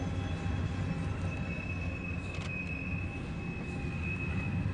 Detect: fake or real real